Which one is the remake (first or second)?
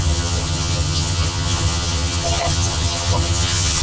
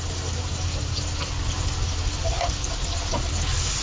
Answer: first